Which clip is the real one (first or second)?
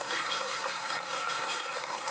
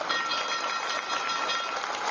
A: second